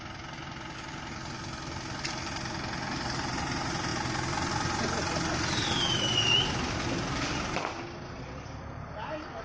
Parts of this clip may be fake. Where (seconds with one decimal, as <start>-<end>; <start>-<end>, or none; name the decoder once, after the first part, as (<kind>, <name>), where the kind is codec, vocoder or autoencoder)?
none